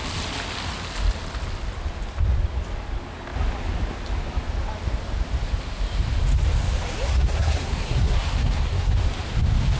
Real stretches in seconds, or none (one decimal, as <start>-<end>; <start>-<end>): 0.0-7.1; 8.9-9.8